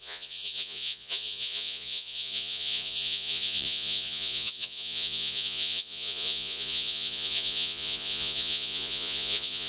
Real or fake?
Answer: fake